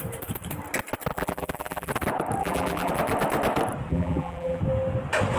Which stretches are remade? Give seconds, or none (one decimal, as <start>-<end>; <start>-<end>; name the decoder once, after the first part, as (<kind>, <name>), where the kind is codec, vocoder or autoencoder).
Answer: 1.1-1.9 (vocoder, BigVGAN v2); 2.4-2.9; 3.9-4.6